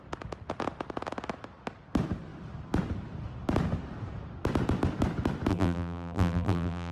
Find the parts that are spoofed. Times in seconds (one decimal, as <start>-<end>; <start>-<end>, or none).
5.5-6.9